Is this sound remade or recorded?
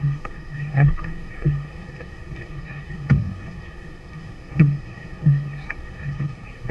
remade